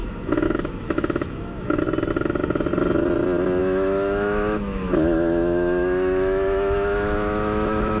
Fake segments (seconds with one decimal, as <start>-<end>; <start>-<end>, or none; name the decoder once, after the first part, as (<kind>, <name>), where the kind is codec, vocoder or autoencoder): 0.0-1.8 (autoencoder, DAC-VAE); 3.6-8.0